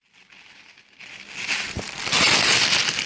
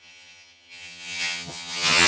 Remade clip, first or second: second